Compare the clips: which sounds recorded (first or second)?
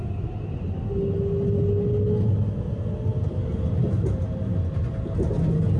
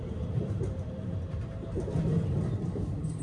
first